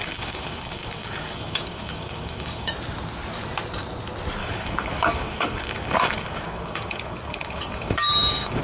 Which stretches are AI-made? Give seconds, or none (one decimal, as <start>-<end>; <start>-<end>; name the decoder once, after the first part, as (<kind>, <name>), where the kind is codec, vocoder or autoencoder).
0.0-2.7 (codec, DAC); 4.4-8.6